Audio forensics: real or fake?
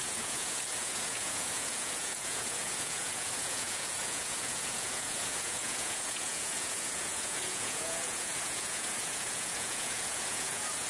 fake